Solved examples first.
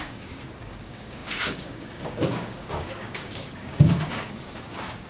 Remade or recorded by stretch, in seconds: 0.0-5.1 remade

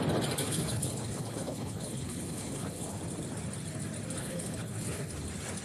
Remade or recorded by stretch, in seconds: 0.0-0.4 recorded; 0.4-3.0 remade; 3.0-4.2 recorded; 4.2-5.1 remade; 5.1-5.6 recorded

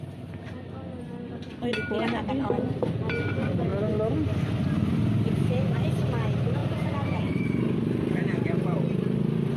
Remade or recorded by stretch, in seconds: 0.0-6.6 recorded; 6.6-8.6 remade; 8.6-9.6 recorded

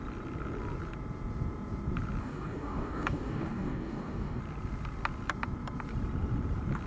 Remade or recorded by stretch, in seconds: 0.0-2.2 recorded; 2.2-4.4 remade; 4.4-6.9 recorded

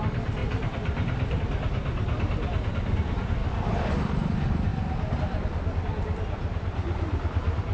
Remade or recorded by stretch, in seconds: 0.0-0.4 recorded; 0.4-1.4 remade; 1.4-3.4 recorded; 3.4-4.3 remade; 4.3-6.4 recorded; 6.4-7.1 remade; 7.1-7.7 recorded

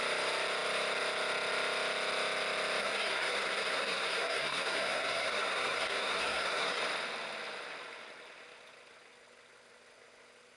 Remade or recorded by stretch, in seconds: 0.0-2.8 recorded; 2.8-6.8 remade; 6.8-10.6 recorded

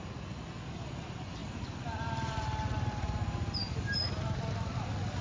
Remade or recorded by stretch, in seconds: 0.0-5.2 recorded

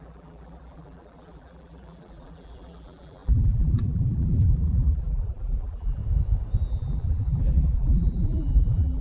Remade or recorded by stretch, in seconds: 0.0-6.0 remade; 6.0-6.7 recorded; 6.7-9.0 remade